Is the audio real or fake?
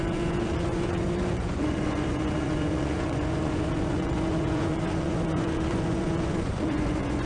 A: fake